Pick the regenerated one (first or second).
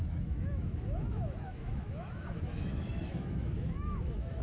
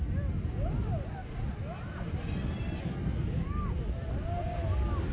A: first